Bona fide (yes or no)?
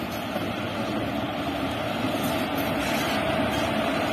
yes